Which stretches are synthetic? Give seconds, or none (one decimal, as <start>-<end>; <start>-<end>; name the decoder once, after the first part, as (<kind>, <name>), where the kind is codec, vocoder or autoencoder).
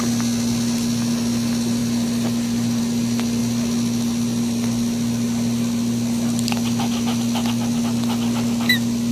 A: 1.8-2.8 (vocoder, BigVGAN v2)